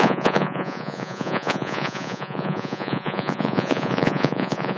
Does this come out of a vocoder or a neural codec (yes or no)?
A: yes